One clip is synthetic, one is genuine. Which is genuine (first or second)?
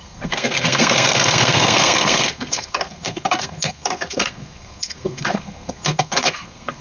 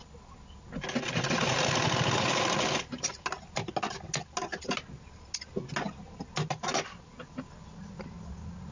second